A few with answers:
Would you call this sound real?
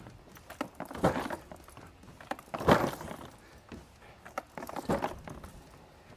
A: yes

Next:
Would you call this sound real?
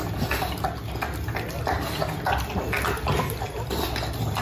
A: yes